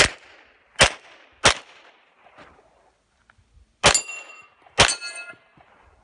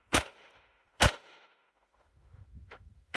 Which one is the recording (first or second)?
first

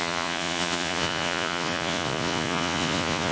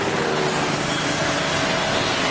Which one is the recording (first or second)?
second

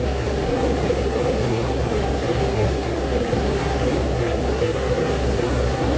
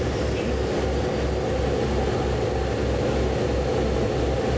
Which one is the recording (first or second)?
second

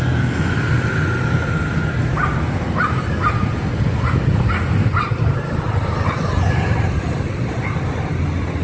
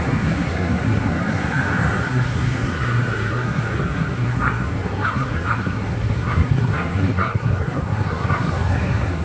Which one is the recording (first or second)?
first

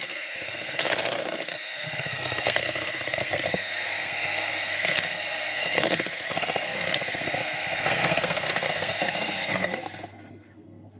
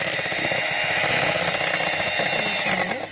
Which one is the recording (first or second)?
second